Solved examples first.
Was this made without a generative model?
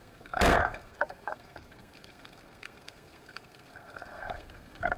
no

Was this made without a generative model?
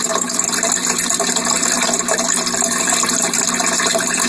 yes